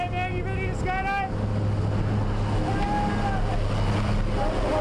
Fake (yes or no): no